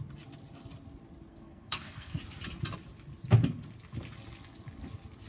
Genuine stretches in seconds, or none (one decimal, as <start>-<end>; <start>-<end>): 0.0-1.3; 2.2-5.3